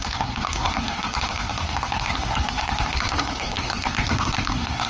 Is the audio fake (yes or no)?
yes